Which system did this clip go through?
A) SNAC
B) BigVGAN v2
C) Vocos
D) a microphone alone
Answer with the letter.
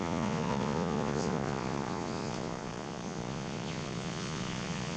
C